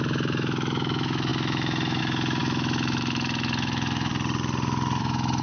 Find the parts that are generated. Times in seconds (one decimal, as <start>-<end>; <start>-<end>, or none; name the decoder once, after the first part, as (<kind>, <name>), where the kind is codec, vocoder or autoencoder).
0.0-4.1 (autoencoder, DAC-VAE); 5.0-5.4